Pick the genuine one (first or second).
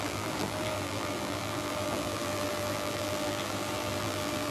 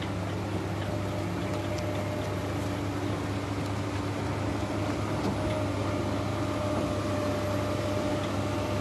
second